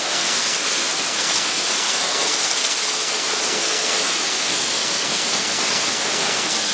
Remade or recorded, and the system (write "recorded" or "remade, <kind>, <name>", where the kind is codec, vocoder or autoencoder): remade, codec, SNAC